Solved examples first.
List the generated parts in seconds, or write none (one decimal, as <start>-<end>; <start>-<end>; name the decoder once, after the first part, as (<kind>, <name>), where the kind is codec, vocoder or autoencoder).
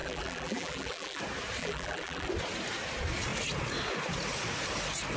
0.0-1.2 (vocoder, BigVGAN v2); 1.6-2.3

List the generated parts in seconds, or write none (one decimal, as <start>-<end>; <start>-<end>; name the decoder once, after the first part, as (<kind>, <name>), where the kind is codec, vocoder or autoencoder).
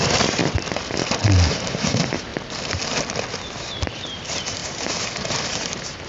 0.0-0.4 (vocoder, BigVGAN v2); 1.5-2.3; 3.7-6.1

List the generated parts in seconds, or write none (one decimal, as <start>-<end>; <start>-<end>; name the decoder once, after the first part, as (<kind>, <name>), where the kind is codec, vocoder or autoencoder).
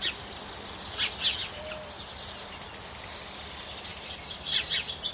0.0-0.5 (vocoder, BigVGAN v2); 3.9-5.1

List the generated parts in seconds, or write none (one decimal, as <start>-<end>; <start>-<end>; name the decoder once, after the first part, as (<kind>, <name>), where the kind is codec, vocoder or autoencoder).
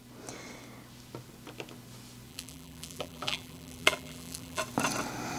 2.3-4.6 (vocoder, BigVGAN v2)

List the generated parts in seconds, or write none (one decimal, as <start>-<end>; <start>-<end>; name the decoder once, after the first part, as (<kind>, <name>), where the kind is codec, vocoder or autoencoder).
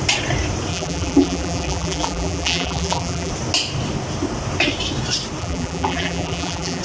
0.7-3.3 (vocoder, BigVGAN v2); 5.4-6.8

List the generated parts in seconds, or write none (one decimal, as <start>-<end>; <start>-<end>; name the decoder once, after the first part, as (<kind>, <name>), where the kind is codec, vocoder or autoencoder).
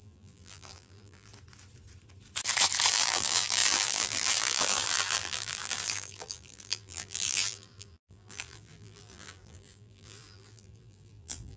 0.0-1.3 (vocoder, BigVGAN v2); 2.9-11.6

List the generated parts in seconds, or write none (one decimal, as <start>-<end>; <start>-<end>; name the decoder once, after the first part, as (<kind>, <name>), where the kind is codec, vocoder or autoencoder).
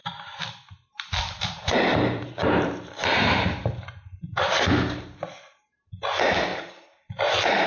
0.0-4.1 (vocoder, BigVGAN v2); 6.5-7.7